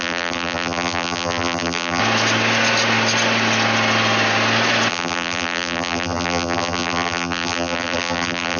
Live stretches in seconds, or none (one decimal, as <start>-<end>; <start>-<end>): 2.0-4.9